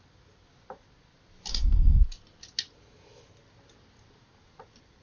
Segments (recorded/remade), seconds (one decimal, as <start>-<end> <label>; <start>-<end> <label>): 0.0-1.5 recorded; 1.5-2.0 remade; 2.0-5.0 recorded